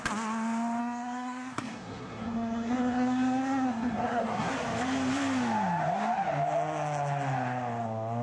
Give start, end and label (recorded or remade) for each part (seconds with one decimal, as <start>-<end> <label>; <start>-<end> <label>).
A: 0.0-0.8 recorded; 0.8-4.5 remade; 4.5-8.2 recorded